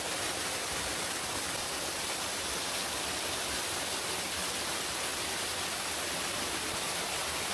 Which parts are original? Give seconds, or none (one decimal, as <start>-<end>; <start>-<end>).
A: 0.0-7.5